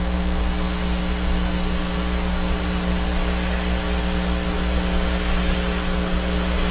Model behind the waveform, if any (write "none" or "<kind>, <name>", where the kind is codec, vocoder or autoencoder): none